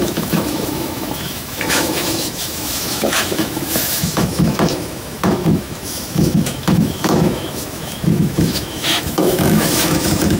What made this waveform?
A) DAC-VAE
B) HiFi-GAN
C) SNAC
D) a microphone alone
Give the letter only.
A